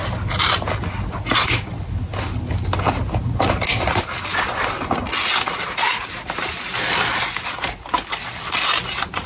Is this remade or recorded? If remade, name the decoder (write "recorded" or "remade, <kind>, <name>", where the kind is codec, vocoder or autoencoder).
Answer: recorded